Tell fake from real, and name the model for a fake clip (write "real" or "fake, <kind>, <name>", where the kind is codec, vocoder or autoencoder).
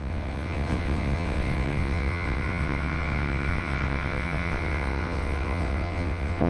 fake, vocoder, WaveNeXt